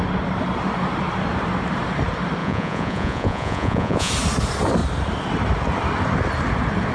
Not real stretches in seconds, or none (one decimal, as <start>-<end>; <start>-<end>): 2.4-4.1